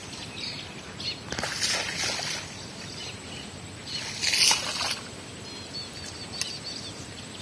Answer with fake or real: real